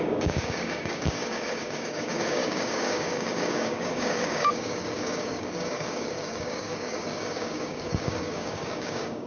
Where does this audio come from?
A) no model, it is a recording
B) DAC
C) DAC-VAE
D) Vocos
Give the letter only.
B